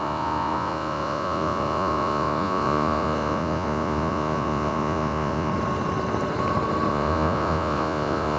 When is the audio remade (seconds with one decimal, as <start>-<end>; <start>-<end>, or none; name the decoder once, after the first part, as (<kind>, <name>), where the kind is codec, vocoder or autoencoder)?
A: 0.0-5.5 (vocoder, Vocos); 6.9-8.4